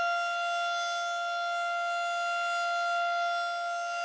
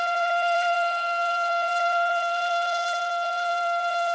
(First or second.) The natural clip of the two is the first